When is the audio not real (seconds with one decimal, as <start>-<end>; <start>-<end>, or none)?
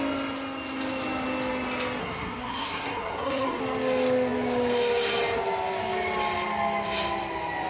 2.0-3.6